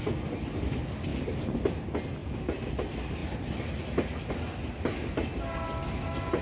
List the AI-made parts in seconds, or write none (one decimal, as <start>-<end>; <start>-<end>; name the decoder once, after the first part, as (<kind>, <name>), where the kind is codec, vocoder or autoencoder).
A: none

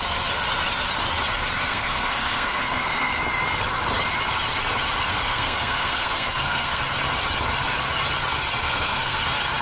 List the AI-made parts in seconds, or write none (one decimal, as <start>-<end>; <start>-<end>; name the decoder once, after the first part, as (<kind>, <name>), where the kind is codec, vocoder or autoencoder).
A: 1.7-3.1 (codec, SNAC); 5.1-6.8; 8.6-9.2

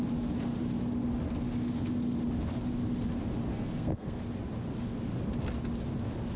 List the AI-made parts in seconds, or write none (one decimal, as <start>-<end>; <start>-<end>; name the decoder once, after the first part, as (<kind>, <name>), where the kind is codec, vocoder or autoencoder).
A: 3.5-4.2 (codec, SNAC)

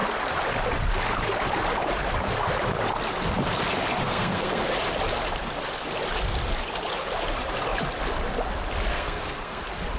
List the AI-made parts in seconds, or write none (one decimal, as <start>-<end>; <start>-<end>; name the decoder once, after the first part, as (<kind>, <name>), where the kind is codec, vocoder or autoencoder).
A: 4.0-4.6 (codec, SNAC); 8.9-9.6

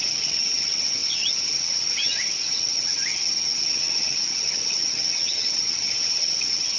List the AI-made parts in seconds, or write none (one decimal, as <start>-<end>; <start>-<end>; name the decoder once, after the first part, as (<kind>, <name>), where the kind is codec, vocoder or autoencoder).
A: 0.0-6.8 (vocoder, HiFi-GAN)